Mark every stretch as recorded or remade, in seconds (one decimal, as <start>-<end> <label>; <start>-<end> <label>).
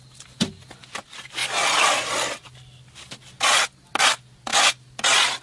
0.0-5.4 recorded